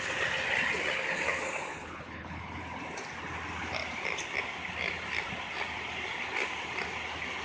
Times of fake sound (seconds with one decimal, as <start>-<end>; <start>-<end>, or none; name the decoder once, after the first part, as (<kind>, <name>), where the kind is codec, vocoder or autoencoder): 1.7-2.6 (codec, HILCodec)